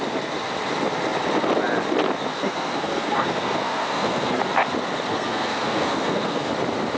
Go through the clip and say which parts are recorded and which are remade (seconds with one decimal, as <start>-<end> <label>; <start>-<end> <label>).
0.0-2.3 recorded; 2.3-4.4 remade; 4.4-5.1 recorded; 5.1-6.5 remade; 6.5-7.0 recorded